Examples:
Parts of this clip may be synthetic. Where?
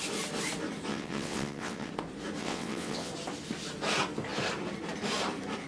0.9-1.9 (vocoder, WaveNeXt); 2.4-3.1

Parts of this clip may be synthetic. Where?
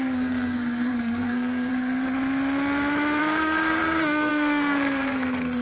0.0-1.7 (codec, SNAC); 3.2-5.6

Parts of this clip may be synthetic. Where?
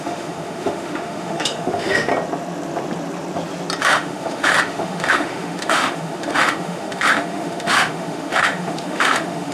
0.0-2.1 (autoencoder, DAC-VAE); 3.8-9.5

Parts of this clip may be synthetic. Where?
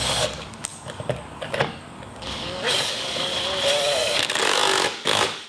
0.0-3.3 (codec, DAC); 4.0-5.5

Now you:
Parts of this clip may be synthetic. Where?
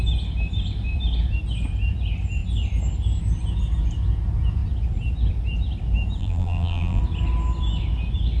6.2-7.0 (vocoder, BigVGAN v2)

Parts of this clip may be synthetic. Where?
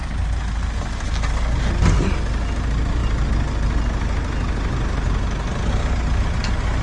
none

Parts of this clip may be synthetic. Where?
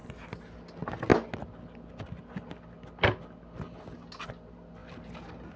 none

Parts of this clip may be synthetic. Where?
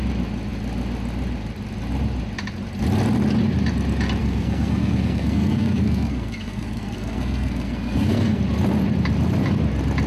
4.2-8.4 (codec, SNAC)